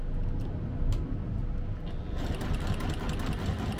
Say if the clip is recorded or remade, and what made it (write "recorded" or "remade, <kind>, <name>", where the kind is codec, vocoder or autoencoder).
recorded